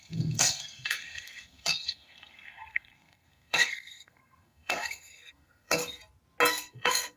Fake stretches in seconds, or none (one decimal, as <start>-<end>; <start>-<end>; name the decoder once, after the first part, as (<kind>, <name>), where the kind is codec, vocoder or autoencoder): 0.0-5.8 (codec, SNAC); 6.5-7.2